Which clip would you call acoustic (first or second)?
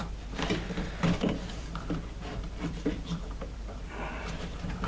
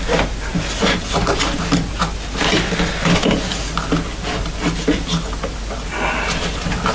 second